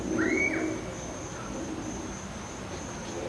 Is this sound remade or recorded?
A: recorded